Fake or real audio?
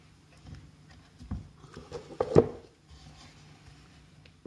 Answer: real